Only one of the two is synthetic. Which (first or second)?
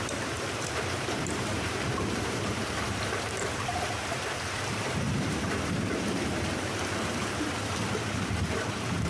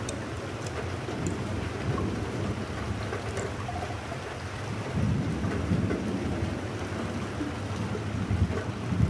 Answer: first